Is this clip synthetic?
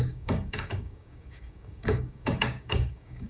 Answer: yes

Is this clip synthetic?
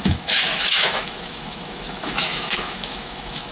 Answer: yes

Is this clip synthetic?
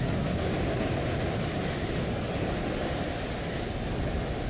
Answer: no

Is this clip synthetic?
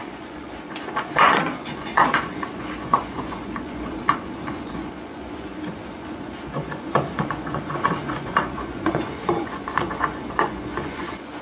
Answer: yes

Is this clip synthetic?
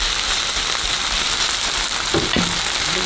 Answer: no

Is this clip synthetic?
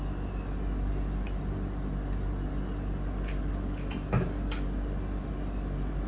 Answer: no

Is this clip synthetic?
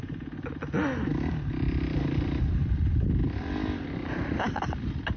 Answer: no